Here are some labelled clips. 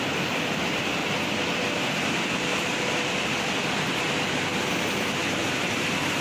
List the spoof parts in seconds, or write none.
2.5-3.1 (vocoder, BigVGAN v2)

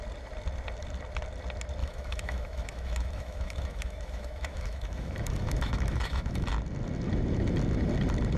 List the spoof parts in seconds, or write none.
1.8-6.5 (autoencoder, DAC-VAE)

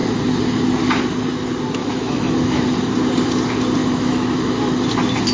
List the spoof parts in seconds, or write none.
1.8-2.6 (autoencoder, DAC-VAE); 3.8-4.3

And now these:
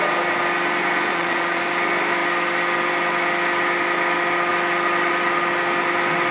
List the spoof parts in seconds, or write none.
1.1-1.6 (vocoder, Vocos)

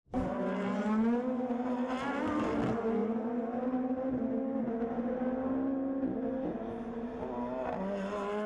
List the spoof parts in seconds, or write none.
none

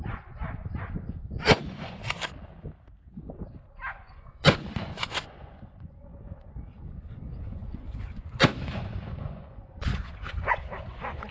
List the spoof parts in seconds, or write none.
0.0-2.0 (vocoder, Vocos); 3.9-11.3